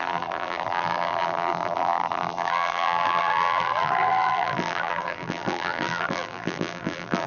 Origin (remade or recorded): remade